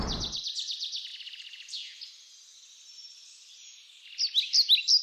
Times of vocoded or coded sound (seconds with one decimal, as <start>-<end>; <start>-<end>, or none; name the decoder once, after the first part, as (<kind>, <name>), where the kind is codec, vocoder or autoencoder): none